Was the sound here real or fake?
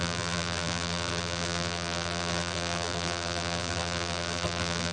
fake